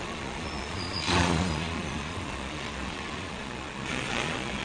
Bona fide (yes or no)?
no